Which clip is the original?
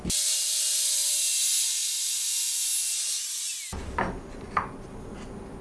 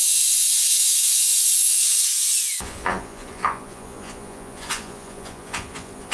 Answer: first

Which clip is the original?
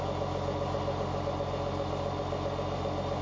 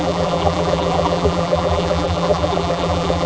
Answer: first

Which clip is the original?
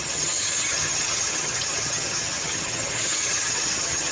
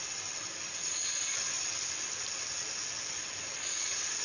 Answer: second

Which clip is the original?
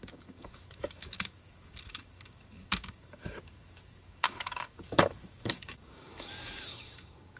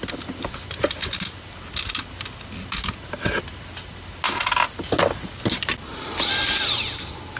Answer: second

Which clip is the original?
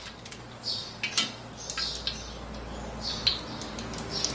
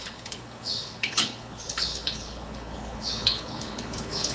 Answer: first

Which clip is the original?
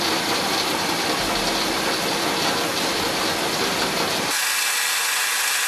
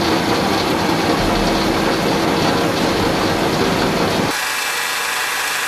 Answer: second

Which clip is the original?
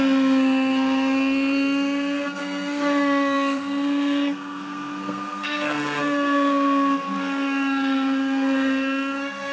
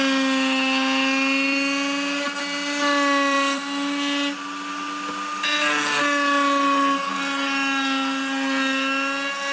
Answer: second